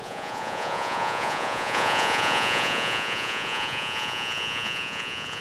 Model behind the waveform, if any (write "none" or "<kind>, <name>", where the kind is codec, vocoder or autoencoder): vocoder, Vocos